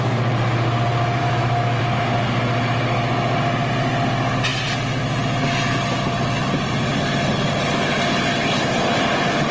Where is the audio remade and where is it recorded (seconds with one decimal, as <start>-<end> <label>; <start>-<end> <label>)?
0.0-1.2 recorded; 1.2-1.8 remade; 1.8-9.5 recorded